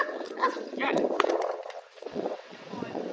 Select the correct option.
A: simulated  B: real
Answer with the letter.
A